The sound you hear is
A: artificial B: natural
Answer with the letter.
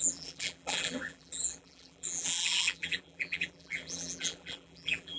A